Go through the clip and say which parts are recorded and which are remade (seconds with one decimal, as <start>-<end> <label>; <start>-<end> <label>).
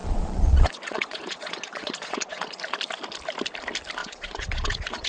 0.0-2.6 remade; 2.6-4.0 recorded; 4.0-5.1 remade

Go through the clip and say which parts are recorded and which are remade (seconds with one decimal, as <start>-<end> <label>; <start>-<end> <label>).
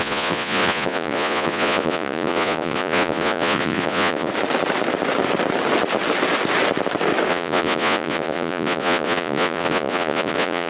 0.0-4.3 remade; 4.3-7.3 recorded; 7.3-10.7 remade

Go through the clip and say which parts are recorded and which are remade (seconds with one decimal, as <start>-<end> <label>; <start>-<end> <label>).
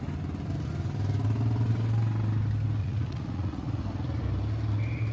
0.0-2.8 recorded; 2.8-3.8 remade; 3.8-5.1 recorded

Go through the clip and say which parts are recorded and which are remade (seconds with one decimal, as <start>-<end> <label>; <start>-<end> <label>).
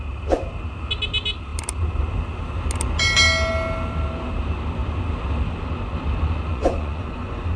0.0-6.5 recorded; 6.5-7.6 remade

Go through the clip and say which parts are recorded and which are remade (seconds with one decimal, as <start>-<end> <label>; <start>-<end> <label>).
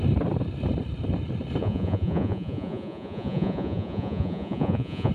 0.0-1.6 recorded; 1.6-5.1 remade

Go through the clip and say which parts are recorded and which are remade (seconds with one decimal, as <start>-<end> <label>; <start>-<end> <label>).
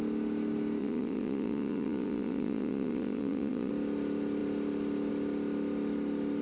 0.0-0.8 recorded; 0.8-3.7 remade; 3.7-6.4 recorded